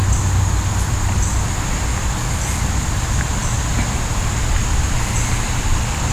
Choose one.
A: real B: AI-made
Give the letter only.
A